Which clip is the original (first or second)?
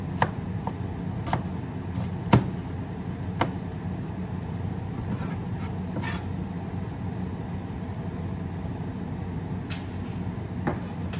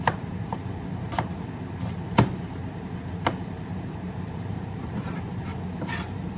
first